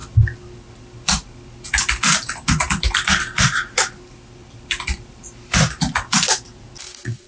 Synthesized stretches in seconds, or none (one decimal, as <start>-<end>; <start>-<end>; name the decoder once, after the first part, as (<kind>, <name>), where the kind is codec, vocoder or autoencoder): 4.4-6.6 (vocoder, BigVGAN v2)

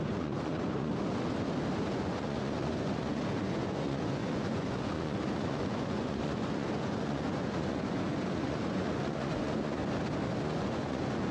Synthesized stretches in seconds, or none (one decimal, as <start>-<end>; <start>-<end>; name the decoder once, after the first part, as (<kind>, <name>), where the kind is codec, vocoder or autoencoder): 0.0-0.9 (vocoder, Vocos); 1.8-9.8; 10.4-11.3

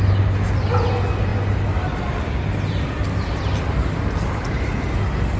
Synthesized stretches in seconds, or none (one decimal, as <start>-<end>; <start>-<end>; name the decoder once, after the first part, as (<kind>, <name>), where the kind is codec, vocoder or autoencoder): none

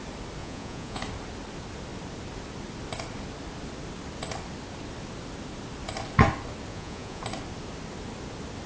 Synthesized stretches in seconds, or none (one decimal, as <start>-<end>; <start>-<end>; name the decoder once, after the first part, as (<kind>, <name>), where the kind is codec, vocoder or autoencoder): 0.4-1.0 (vocoder, Vocos); 6.7-7.2

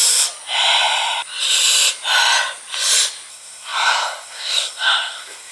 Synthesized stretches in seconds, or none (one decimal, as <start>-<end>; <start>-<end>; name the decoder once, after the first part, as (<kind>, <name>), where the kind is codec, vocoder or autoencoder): 3.3-5.5 (codec, SNAC)